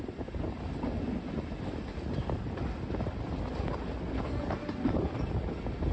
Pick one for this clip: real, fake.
real